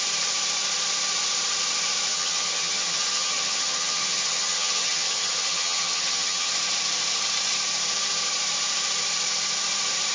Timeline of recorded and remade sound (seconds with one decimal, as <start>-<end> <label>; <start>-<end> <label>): 0.0-2.1 recorded; 2.1-6.5 remade; 6.5-10.1 recorded